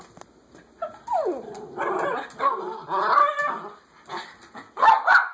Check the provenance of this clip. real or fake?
real